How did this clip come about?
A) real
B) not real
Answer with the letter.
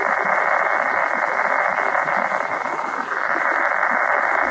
A